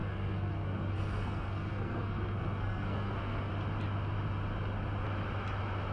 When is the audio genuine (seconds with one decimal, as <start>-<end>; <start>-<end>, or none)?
3.5-5.9